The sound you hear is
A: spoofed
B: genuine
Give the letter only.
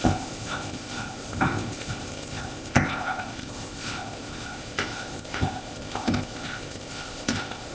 A